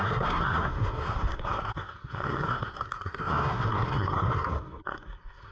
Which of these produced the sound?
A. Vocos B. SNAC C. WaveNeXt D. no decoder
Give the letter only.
B